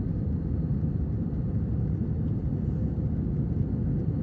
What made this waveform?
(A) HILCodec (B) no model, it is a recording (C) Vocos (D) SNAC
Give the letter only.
B